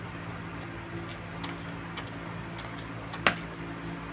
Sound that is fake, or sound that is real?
real